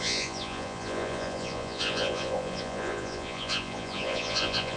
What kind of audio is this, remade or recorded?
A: remade